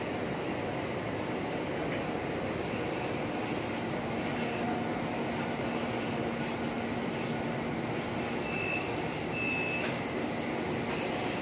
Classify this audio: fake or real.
real